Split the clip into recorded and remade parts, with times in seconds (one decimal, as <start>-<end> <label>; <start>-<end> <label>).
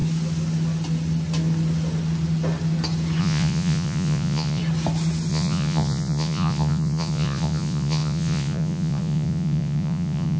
0.0-3.2 recorded; 3.2-4.6 remade; 4.6-5.3 recorded; 5.3-10.4 remade